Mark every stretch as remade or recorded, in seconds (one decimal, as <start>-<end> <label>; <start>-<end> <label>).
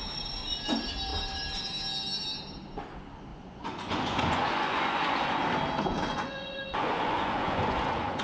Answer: 0.0-3.3 recorded; 3.3-5.4 remade; 5.4-6.1 recorded; 6.1-8.2 remade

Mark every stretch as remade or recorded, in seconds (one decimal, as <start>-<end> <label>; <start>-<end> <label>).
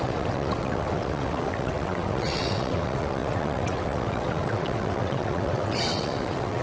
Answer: 0.0-6.6 remade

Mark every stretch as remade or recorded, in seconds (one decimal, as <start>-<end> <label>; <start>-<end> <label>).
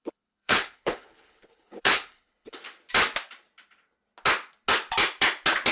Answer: 0.0-2.6 remade; 2.6-5.7 recorded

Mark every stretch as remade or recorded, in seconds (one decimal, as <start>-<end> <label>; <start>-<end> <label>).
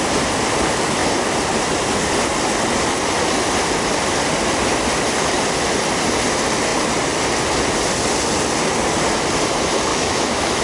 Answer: 0.0-9.9 recorded; 9.9-10.6 remade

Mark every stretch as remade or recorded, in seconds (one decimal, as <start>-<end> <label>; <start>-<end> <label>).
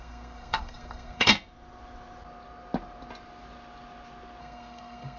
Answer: 0.0-1.3 remade; 1.3-4.4 recorded; 4.4-5.2 remade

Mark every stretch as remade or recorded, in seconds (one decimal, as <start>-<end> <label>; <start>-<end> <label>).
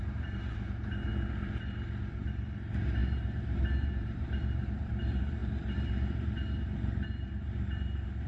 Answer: 0.0-1.1 remade; 1.1-2.0 recorded; 2.0-8.3 remade